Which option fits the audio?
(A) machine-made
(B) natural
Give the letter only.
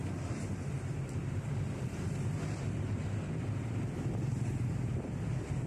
A